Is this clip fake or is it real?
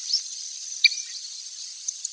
real